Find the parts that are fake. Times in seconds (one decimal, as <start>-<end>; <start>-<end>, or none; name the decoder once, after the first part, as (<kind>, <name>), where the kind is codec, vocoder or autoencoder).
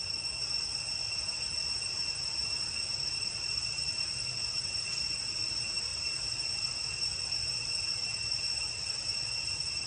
none